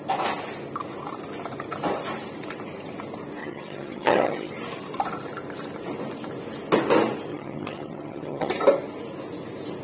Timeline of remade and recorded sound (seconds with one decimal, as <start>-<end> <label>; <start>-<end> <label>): 0.0-3.4 recorded; 3.4-4.5 remade; 4.5-7.3 recorded; 7.3-8.5 remade; 8.5-9.8 recorded